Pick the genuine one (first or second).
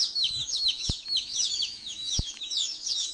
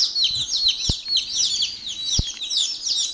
second